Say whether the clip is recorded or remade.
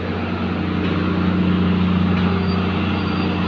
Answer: recorded